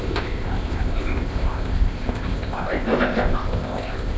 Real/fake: fake